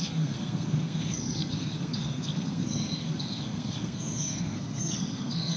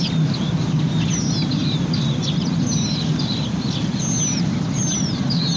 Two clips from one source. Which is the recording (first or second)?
second